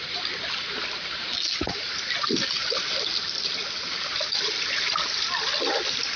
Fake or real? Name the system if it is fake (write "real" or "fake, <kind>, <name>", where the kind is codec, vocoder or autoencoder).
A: real